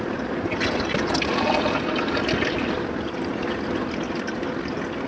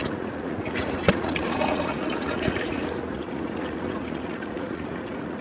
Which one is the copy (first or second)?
second